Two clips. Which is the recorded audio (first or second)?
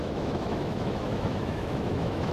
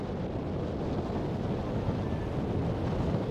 second